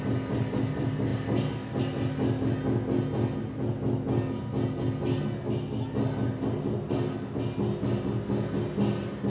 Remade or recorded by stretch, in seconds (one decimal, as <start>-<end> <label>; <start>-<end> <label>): 0.0-9.3 recorded